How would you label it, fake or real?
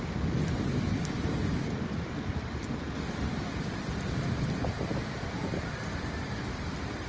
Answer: fake